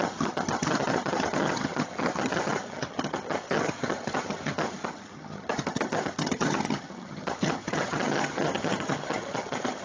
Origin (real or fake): fake